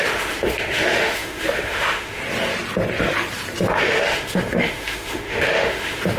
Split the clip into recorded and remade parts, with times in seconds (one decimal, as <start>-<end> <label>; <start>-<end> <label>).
0.0-2.2 remade; 2.2-3.7 recorded; 3.7-6.2 remade